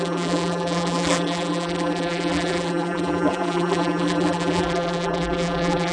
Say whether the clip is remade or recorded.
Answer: remade